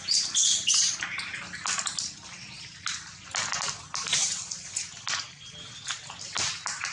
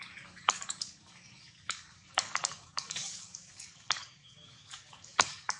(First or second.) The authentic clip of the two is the first